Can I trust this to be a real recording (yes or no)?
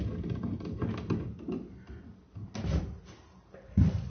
yes